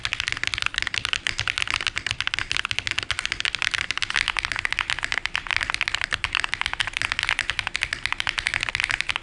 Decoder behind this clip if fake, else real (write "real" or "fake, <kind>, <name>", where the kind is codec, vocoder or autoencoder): real